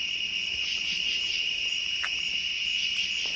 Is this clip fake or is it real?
real